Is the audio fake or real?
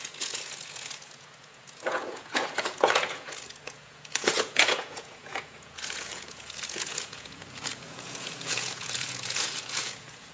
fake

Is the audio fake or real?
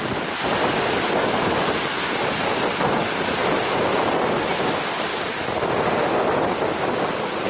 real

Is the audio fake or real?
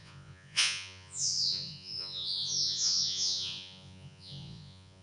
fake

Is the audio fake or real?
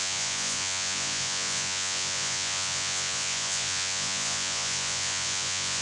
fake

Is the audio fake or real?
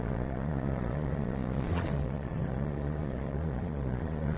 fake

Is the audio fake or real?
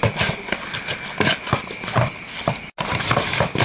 real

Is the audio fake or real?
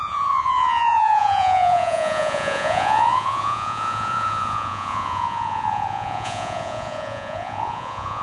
fake